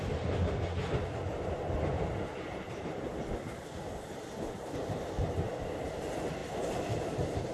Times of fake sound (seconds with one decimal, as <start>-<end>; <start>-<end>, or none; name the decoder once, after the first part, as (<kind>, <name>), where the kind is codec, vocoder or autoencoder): none